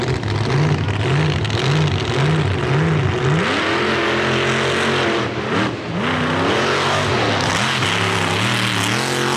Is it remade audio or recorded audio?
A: recorded